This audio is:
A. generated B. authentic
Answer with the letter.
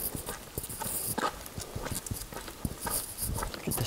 B